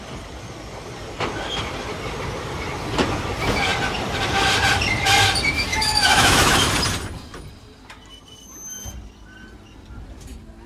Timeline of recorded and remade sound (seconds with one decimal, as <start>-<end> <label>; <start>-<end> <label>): 0.0-5.7 recorded; 5.7-6.7 remade; 6.7-10.7 recorded